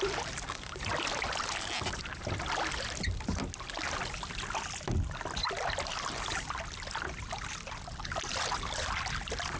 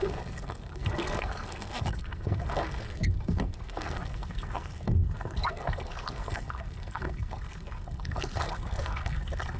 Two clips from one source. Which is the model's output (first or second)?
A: second